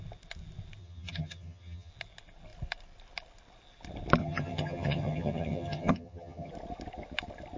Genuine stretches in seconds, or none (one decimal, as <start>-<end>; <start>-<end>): 0.0-0.8; 1.9-4.2; 6.5-7.6